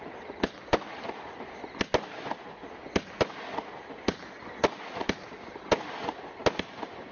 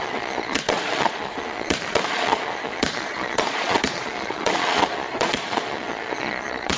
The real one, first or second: first